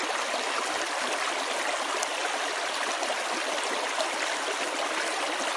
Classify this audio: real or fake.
real